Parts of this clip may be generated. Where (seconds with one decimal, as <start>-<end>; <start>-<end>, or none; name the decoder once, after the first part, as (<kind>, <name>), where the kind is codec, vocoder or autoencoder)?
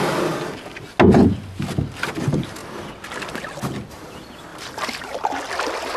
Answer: 4.5-5.4 (vocoder, BigVGAN v2)